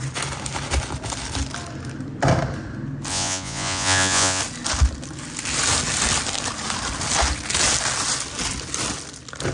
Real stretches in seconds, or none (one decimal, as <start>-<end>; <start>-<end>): 0.0-3.1; 4.4-9.5